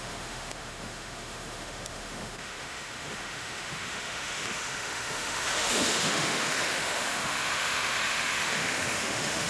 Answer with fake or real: fake